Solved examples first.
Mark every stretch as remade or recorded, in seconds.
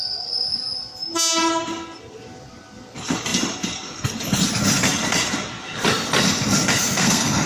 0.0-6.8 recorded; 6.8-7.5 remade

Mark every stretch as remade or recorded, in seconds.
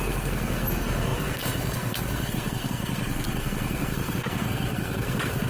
0.0-5.5 remade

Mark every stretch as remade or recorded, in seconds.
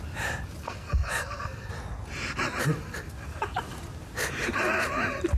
0.0-0.6 recorded; 0.6-1.7 remade; 1.7-5.4 recorded